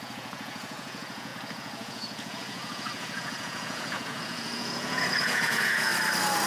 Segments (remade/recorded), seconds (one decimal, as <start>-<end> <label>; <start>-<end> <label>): 0.0-5.9 remade; 5.9-6.5 recorded